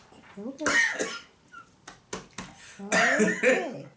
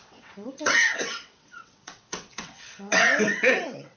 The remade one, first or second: second